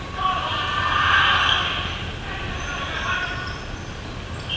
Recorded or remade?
recorded